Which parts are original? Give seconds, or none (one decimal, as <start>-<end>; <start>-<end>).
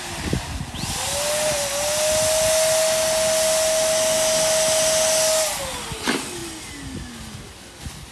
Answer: 0.0-8.1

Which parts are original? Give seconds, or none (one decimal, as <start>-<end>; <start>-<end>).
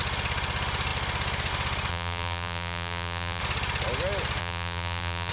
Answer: 0.0-1.9; 3.4-4.4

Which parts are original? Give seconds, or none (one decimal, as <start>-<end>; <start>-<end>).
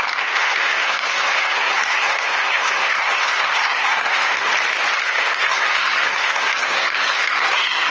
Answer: 4.5-5.0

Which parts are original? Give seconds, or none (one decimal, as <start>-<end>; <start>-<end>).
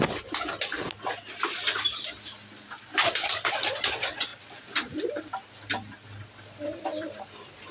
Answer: 0.0-7.7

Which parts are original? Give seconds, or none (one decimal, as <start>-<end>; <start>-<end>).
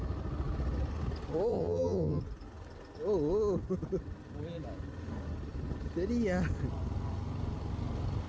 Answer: 0.0-1.5; 2.2-8.3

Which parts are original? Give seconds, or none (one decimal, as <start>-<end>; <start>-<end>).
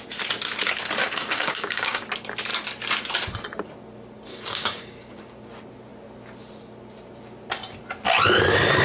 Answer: 0.0-1.0; 2.1-4.3; 5.4-8.8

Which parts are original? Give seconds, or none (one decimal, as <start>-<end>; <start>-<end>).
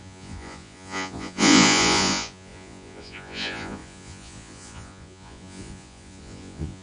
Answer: none